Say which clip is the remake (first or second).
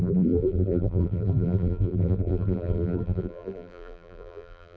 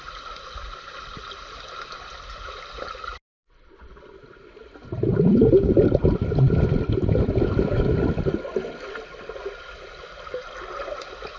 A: first